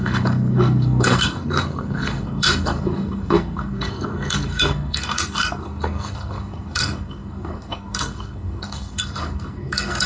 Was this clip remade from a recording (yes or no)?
yes